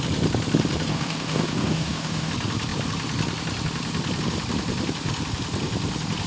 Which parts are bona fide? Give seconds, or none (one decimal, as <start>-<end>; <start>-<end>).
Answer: 0.0-0.9; 2.3-6.3

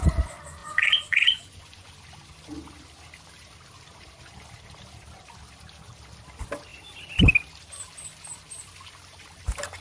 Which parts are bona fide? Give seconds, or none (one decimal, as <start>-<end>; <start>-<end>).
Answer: 0.0-0.6; 1.9-9.8